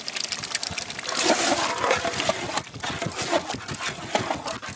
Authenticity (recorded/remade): recorded